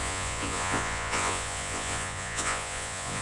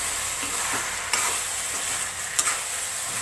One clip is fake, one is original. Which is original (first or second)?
second